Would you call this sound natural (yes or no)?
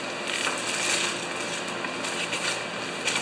yes